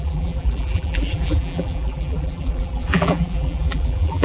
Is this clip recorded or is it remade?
remade